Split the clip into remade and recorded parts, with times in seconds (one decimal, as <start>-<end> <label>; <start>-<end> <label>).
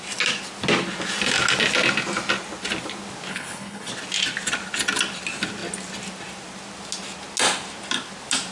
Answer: 0.0-3.3 recorded; 3.3-3.9 remade; 3.9-8.5 recorded